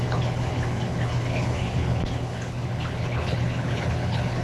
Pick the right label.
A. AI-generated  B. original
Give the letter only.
A